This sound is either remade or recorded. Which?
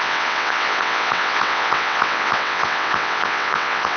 remade